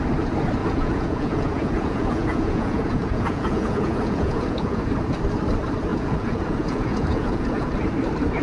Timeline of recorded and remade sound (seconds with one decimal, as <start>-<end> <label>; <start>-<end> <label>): 0.0-0.6 recorded; 0.6-4.8 remade; 4.8-5.9 recorded; 5.9-7.7 remade; 7.7-8.4 recorded